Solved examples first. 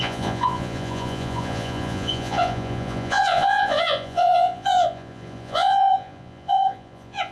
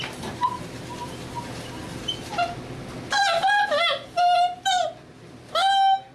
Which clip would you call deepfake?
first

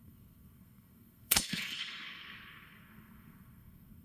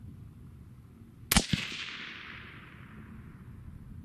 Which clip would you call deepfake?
first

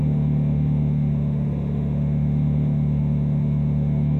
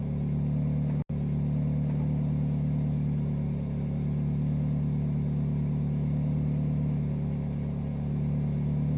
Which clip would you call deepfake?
first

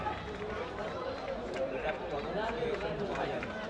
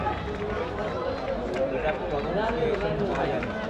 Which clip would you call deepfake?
first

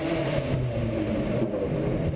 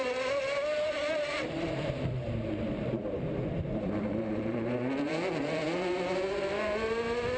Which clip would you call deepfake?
second